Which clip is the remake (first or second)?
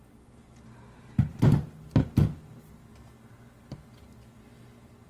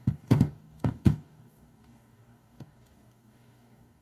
second